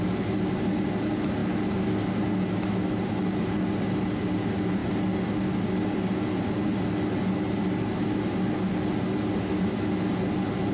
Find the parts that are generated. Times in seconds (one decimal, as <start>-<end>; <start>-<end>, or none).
none